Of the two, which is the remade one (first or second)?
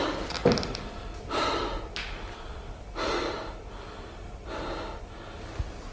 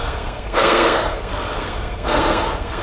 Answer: second